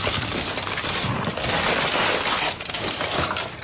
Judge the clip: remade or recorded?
recorded